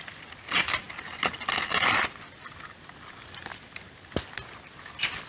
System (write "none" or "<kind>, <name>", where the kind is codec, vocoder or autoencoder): none